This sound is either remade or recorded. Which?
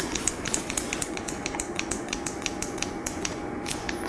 remade